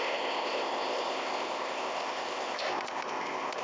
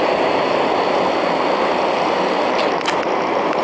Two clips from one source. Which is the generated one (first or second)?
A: first